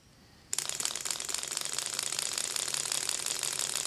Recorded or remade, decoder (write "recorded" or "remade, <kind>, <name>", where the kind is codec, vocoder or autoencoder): recorded